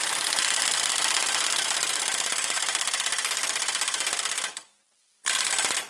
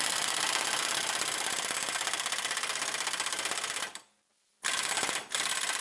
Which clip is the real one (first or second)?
second